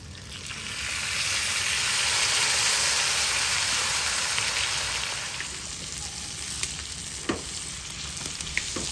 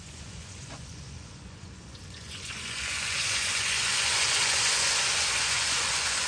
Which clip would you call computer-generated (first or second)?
second